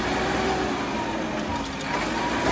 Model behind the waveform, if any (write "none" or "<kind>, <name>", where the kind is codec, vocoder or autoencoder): none